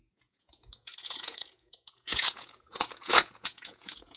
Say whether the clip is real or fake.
fake